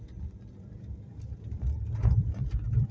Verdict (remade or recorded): recorded